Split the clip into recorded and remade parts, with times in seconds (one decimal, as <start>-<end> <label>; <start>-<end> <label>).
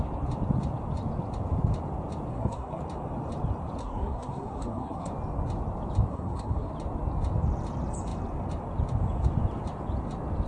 0.0-2.3 recorded; 2.3-2.8 remade; 2.8-3.8 recorded; 3.8-5.1 remade; 5.1-6.1 recorded; 6.1-6.7 remade; 6.7-10.5 recorded